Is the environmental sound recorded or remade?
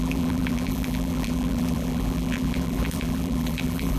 remade